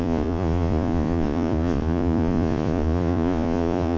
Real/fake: fake